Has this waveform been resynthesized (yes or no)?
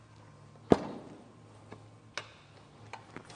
no